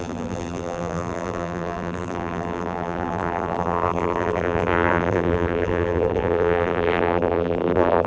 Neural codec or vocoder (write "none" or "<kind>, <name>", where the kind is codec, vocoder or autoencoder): vocoder, BigVGAN v2